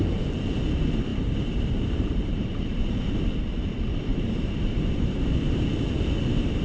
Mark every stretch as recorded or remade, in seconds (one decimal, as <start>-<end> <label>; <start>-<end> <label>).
0.0-1.1 recorded; 1.1-3.0 remade; 3.0-4.1 recorded; 4.1-5.7 remade; 5.7-6.6 recorded